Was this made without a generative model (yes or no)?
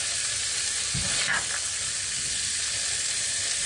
yes